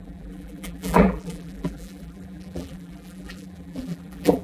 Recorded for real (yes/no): no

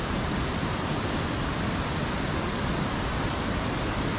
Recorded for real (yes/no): yes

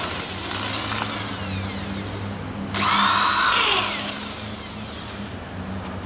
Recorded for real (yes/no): yes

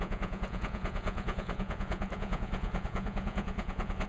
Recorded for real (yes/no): no